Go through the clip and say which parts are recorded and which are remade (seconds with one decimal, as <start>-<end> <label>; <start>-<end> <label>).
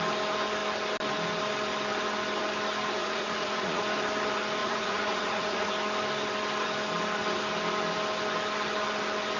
0.0-3.0 recorded; 3.0-3.8 remade; 3.8-4.6 recorded; 4.6-5.7 remade; 5.7-9.4 recorded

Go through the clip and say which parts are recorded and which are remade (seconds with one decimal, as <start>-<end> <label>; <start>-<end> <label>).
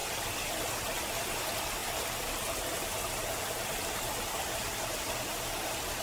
0.0-1.8 recorded; 1.8-4.3 remade; 4.3-6.0 recorded